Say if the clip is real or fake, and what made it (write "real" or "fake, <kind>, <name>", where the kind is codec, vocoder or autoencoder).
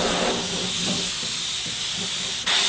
real